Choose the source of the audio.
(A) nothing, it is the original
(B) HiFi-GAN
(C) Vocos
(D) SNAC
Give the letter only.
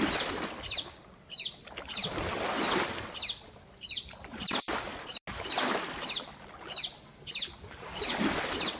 A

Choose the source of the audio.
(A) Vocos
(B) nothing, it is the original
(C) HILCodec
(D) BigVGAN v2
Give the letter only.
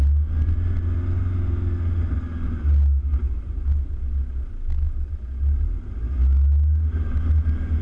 B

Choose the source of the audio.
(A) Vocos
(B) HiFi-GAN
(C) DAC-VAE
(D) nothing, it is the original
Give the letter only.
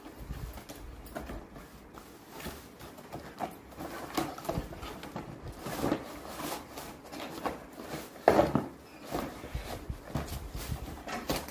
D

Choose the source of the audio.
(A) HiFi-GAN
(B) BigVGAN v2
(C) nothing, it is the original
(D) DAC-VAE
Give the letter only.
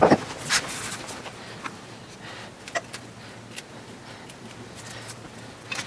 C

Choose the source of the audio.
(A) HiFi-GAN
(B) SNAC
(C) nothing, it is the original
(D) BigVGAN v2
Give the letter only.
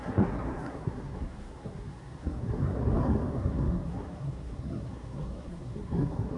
B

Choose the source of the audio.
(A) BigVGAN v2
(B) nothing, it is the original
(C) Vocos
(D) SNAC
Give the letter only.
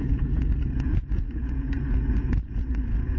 C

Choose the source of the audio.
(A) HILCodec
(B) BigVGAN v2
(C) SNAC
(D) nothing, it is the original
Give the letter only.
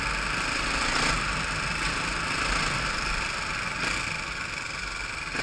D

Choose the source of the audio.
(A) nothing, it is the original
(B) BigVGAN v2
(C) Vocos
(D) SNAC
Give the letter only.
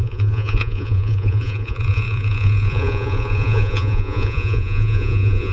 C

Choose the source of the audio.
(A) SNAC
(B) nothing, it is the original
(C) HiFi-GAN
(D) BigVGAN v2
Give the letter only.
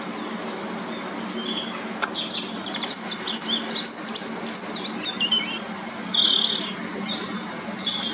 B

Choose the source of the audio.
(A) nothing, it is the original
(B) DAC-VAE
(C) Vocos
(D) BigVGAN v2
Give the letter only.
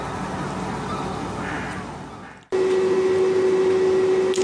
A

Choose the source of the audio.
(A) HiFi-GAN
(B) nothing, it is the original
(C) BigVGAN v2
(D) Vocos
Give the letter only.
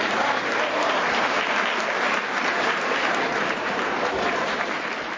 C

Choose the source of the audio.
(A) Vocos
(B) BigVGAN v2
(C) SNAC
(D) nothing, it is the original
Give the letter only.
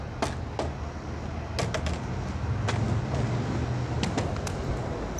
D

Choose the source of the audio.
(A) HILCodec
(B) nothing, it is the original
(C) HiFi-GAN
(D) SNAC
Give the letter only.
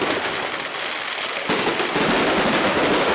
B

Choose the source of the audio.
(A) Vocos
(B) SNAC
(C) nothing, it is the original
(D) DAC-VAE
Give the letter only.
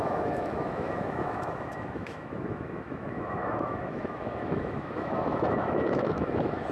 D